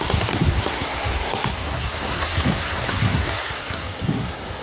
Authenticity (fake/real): fake